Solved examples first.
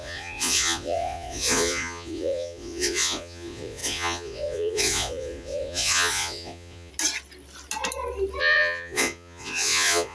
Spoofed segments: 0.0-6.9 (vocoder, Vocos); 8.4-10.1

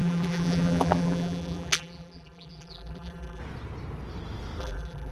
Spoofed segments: 0.0-3.4 (vocoder, BigVGAN v2); 4.6-5.1